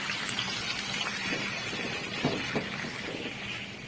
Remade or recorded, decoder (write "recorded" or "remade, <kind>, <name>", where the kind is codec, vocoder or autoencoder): remade, vocoder, BigVGAN v2